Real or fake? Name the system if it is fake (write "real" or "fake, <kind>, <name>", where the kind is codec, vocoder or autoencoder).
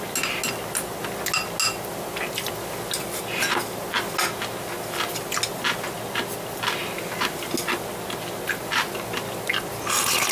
real